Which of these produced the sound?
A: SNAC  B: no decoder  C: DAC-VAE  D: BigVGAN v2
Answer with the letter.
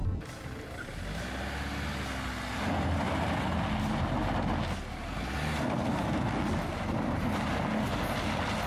B